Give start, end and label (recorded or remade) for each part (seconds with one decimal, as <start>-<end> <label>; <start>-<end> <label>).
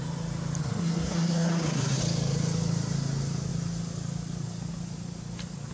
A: 0.0-0.6 recorded; 0.6-2.0 remade; 2.0-5.7 recorded